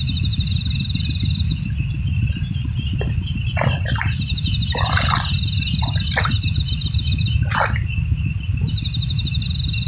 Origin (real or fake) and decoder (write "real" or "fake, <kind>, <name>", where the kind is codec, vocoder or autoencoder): real